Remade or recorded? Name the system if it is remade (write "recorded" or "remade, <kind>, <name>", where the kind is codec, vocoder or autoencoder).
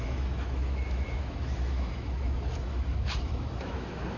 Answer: remade, autoencoder, DAC-VAE